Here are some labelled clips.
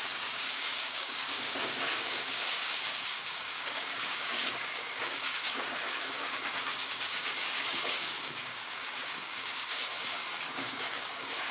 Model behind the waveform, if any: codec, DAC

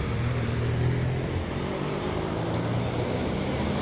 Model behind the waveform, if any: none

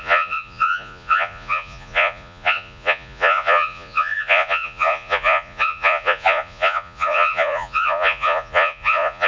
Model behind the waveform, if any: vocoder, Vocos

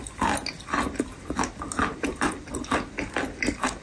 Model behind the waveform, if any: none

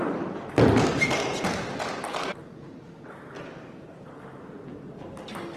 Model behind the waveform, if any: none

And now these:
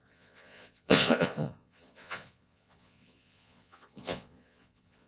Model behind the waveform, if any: vocoder, Vocos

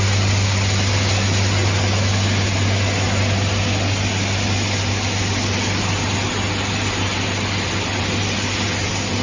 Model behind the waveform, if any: none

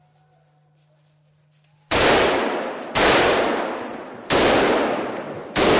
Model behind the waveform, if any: none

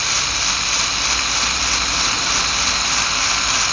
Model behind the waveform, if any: none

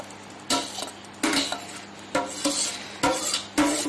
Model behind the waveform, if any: none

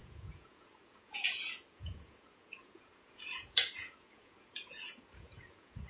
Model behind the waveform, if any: vocoder, Vocos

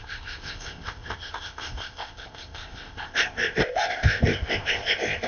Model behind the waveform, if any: codec, ZipCodec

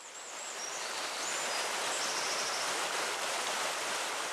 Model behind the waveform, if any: vocoder, BigVGAN v2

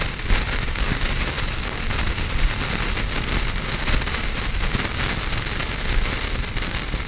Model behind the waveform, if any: none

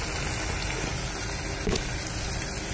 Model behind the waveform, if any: none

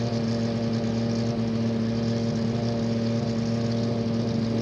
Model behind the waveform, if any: none